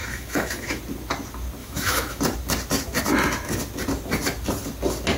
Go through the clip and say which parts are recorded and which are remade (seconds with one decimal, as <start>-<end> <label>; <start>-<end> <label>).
0.0-0.8 remade; 0.8-1.6 recorded; 1.6-2.2 remade; 2.2-5.2 recorded